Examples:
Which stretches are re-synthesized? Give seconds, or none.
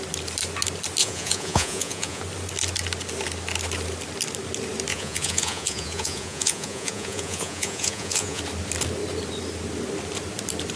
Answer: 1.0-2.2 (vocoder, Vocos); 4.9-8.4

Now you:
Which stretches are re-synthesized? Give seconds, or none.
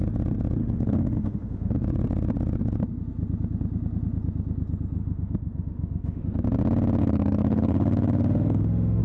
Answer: 0.6-1.7 (autoencoder, DAC-VAE); 5.0-6.2; 7.0-9.0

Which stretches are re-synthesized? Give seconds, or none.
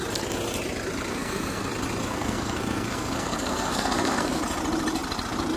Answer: 1.1-1.7 (codec, SNAC); 2.1-4.4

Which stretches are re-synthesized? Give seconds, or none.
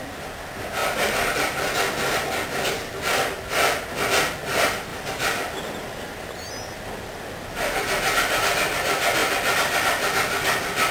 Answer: 0.8-1.7 (vocoder, BigVGAN v2); 4.9-5.6; 9.2-10.3